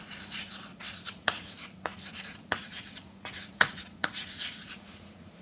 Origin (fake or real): fake